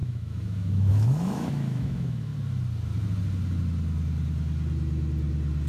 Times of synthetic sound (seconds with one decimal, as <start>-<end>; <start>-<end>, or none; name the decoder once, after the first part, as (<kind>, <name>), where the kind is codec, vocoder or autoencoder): 0.0-2.3 (autoencoder, DAC-VAE)